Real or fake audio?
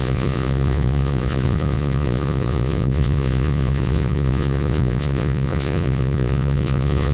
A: fake